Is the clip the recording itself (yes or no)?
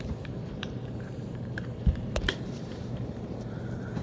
no